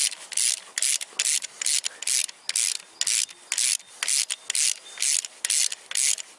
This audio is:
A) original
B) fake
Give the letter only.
A